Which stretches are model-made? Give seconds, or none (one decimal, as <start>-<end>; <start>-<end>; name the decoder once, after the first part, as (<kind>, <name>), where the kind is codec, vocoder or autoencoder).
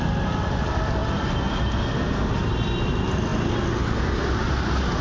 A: none